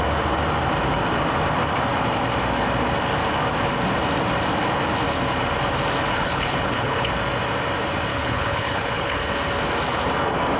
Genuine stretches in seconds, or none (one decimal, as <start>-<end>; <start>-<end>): 0.0-6.1; 7.1-8.1; 9.2-10.6